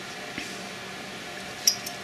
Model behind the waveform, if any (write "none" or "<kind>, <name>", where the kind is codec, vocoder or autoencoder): none